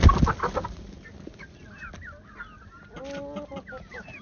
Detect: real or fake real